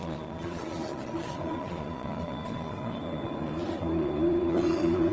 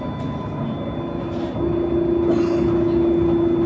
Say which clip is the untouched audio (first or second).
second